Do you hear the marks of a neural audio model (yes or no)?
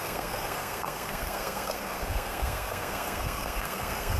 yes